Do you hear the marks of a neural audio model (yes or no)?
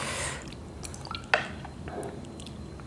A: no